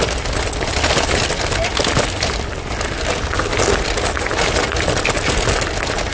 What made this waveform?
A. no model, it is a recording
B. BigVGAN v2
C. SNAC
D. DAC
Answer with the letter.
A